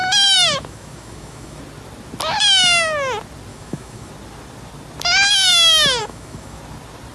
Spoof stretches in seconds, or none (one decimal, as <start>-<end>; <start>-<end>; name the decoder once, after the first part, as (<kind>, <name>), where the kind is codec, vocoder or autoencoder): 0.0-1.6 (autoencoder, DAC-VAE); 3.5-4.1; 6.0-6.6